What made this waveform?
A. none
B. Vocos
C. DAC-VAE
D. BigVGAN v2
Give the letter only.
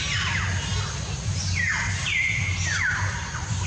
D